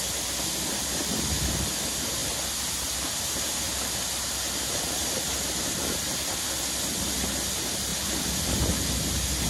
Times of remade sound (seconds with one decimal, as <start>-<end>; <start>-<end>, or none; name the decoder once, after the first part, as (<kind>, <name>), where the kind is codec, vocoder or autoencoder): none